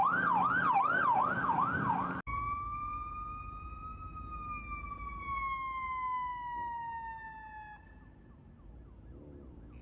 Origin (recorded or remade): recorded